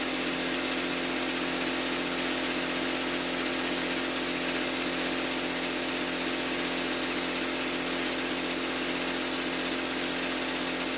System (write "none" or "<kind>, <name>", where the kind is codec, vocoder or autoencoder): none